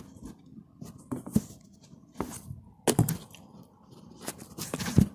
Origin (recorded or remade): recorded